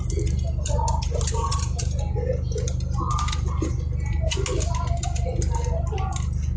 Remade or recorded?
recorded